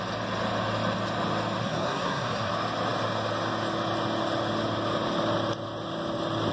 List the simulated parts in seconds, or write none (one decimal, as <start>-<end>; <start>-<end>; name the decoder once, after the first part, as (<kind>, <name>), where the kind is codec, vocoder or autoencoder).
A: 1.6-2.5 (codec, SNAC)